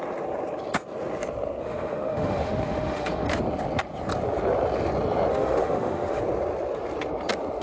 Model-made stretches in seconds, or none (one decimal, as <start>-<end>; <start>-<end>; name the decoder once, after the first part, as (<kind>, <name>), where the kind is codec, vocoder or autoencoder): 1.6-3.3 (autoencoder, DAC-VAE); 5.3-6.2